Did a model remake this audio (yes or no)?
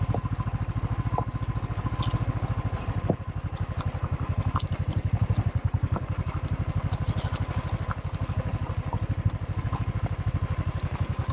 no